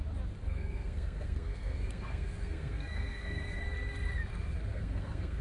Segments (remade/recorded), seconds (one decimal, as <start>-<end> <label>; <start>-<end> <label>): 0.0-0.4 recorded; 0.4-3.6 remade; 3.6-4.7 recorded; 4.7-5.4 remade